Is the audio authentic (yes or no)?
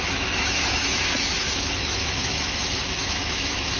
no